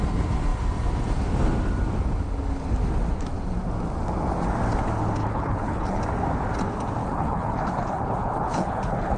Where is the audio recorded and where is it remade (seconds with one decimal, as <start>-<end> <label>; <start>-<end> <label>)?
0.0-5.2 recorded; 5.2-6.0 remade; 6.0-7.0 recorded; 7.0-9.2 remade